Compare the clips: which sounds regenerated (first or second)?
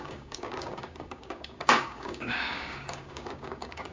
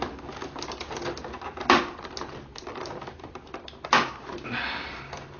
first